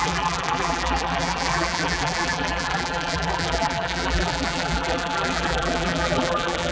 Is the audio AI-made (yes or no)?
yes